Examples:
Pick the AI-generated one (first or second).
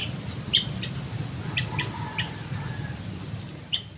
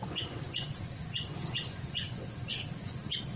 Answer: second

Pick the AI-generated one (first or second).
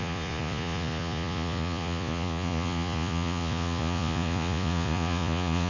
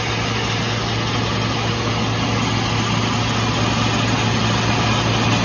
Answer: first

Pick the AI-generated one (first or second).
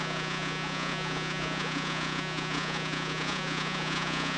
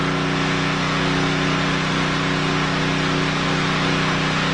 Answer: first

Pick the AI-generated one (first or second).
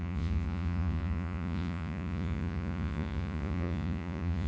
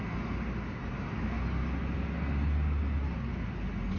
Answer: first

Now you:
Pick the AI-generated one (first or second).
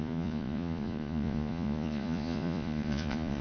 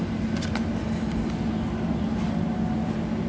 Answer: first